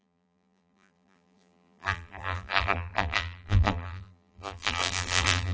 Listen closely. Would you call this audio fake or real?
fake